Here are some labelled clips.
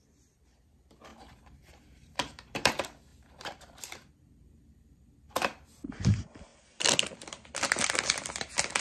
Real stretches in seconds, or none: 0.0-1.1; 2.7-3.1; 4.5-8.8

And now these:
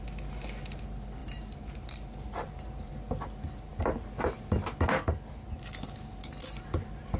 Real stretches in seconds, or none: 0.0-1.2; 2.9-7.2

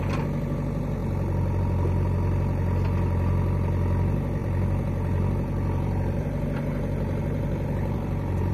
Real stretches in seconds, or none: 0.0-4.4

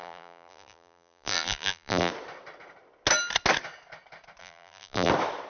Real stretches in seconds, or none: 2.1-4.4; 5.1-5.5

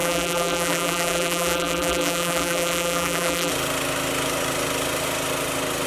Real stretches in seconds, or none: 3.5-5.9

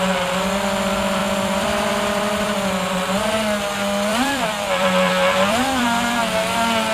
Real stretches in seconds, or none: 0.0-1.2; 3.3-4.1; 6.2-6.9